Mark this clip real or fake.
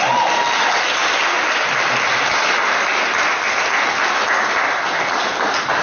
real